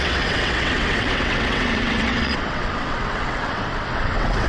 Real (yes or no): no